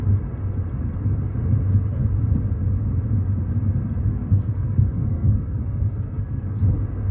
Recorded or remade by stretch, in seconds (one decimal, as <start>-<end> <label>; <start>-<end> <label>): 0.0-4.1 recorded; 4.1-6.6 remade; 6.6-7.1 recorded